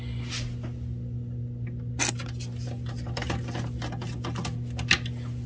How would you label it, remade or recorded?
recorded